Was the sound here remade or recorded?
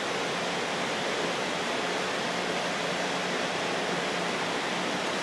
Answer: recorded